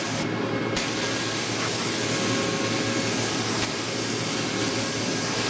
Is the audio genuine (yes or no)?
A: yes